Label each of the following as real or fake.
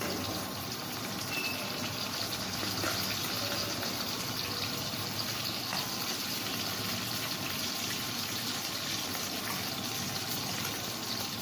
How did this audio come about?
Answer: real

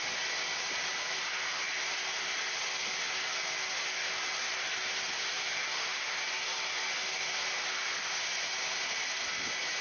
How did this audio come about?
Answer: real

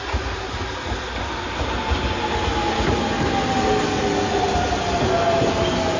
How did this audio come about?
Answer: real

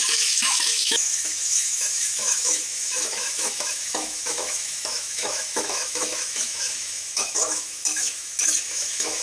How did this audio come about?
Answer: fake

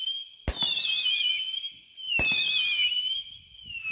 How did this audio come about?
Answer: real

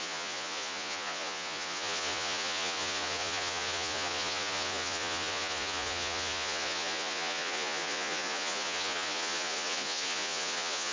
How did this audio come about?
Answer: fake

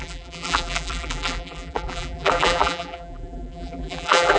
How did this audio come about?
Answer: fake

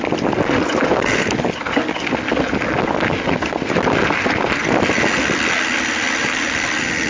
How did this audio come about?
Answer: real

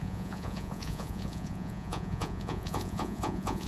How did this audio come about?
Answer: fake